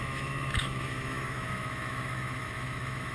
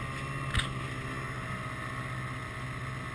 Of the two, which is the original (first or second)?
second